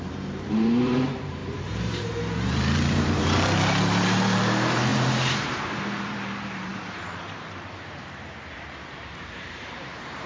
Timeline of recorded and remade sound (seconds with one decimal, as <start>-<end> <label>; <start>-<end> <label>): 0.0-10.3 remade

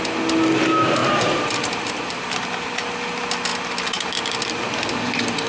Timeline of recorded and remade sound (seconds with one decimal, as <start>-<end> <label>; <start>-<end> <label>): 0.0-1.0 recorded; 1.0-2.3 remade; 2.3-5.5 recorded

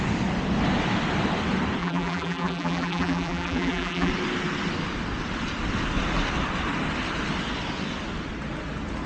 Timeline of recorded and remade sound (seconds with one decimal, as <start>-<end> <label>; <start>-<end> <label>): 0.0-1.8 recorded; 1.8-4.1 remade; 4.1-9.1 recorded

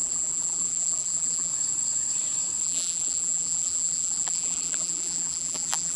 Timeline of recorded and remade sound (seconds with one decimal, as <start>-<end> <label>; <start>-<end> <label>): 0.0-1.5 remade; 1.5-2.6 recorded; 2.6-6.0 remade

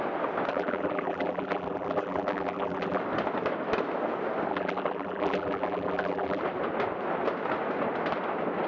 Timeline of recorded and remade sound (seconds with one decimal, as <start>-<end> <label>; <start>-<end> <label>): 0.0-0.5 recorded; 0.5-3.0 remade; 3.0-4.5 recorded; 4.5-6.4 remade; 6.4-8.7 recorded

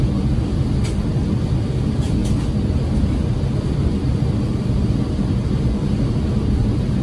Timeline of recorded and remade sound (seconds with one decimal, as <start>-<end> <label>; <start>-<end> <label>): 0.0-7.0 recorded

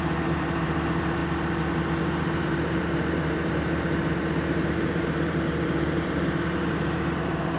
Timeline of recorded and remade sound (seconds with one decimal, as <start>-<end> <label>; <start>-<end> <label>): 0.0-1.2 remade; 1.2-2.0 recorded; 2.0-7.6 remade